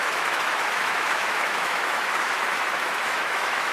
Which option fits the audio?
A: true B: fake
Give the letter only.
B